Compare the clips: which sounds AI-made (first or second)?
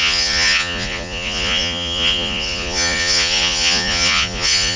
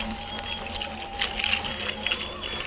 first